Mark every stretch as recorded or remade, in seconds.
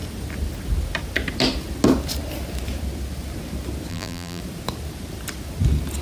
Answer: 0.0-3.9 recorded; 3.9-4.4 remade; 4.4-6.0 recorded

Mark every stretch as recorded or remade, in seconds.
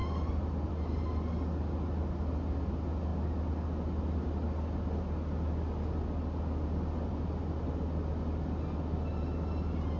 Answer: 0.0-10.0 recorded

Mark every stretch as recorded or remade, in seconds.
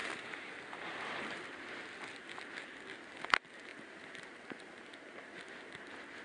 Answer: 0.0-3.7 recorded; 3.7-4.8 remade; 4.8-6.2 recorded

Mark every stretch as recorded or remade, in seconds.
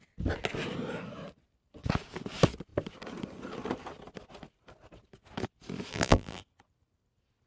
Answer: 0.0-5.9 recorded; 5.9-6.4 remade; 6.4-7.5 recorded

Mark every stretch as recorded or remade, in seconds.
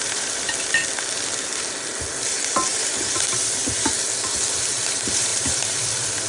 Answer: 0.0-0.8 remade; 0.8-2.7 recorded; 2.7-3.6 remade; 3.6-4.7 recorded; 4.7-6.3 remade